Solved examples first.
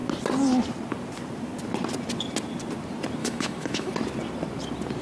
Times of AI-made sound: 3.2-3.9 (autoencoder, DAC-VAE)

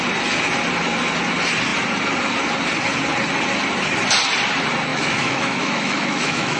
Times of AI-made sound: 4.9-6.6 (autoencoder, DAC-VAE)

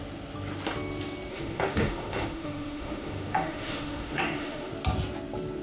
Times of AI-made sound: 1.3-4.7 (autoencoder, DAC-VAE)

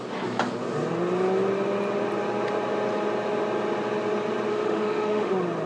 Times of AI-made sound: 4.5-5.3 (autoencoder, DAC-VAE)

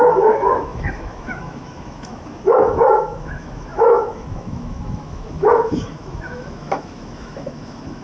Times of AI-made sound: 0.0-8.0 (autoencoder, DAC-VAE)

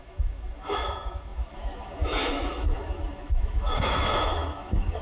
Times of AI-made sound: 0.0-5.0 (autoencoder, DAC-VAE)

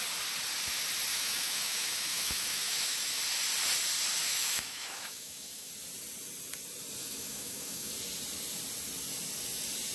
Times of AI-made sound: 1.1-3.2 (autoencoder, DAC-VAE); 4.2-5.7; 7.0-7.9

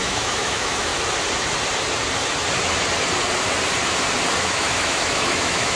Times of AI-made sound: 0.0-0.9 (autoencoder, DAC-VAE); 4.4-5.8